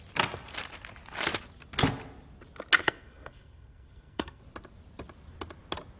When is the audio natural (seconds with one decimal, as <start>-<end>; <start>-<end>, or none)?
0.0-2.8; 4.4-6.0